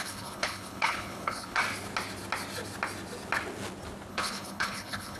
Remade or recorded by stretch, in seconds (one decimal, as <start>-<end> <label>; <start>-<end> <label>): 0.0-1.6 remade; 1.6-4.1 recorded; 4.1-5.2 remade